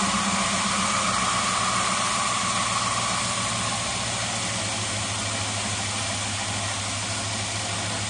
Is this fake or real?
real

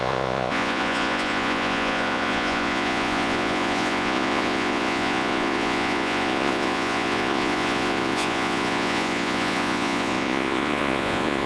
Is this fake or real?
fake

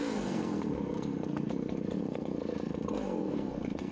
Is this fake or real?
fake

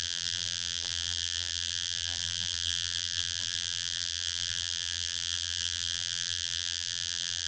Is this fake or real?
fake